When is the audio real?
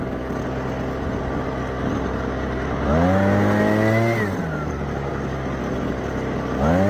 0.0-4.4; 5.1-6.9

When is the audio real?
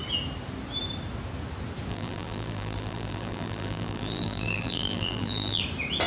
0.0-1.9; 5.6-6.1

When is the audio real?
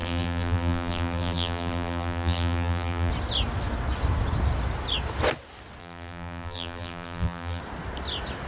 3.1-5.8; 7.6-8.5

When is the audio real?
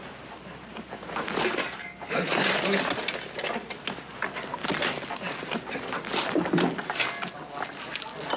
0.0-8.4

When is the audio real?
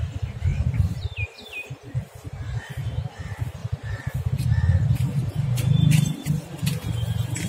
0.0-0.5; 2.7-3.6; 4.2-5.2; 6.3-7.5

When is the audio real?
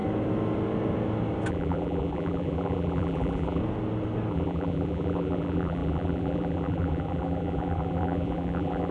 0.0-1.5; 3.6-4.3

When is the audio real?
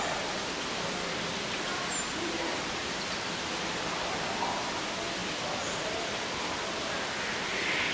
0.0-1.7; 2.9-7.9